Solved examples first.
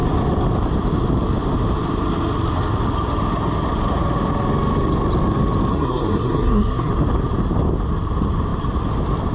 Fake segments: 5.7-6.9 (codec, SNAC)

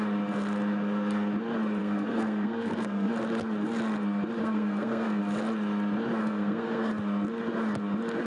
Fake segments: 1.8-3.1 (codec, SNAC); 4.4-5.2; 6.2-6.9

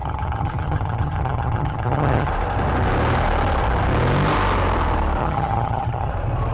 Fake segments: 0.0-2.3 (vocoder, HiFi-GAN); 5.2-6.1

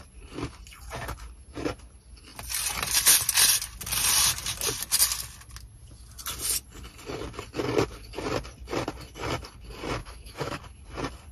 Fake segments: 10.0-10.6 (autoencoder, DAC-VAE)

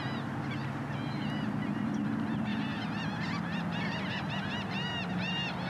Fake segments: none

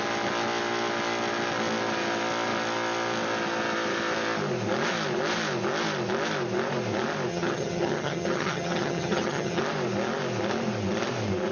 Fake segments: 7.3-9.6 (vocoder, HiFi-GAN)

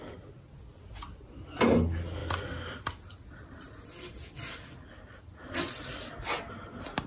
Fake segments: none

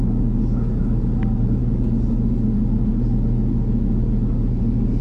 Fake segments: none